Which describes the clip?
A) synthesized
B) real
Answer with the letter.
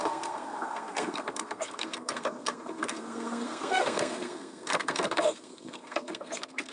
A